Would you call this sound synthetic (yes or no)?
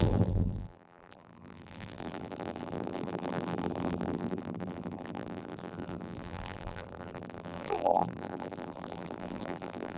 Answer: yes